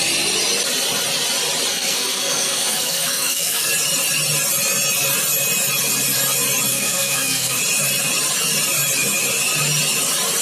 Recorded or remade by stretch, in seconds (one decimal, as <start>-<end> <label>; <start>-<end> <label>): 0.0-1.7 recorded; 1.7-3.7 remade; 3.7-6.7 recorded; 6.7-7.6 remade; 7.6-10.4 recorded